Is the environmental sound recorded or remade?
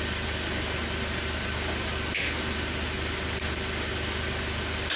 recorded